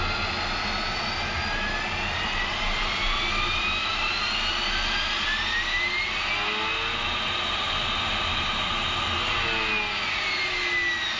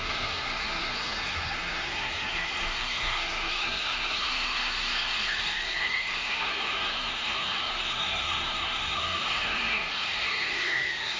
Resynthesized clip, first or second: second